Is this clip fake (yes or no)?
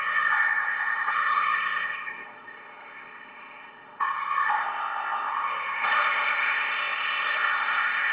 yes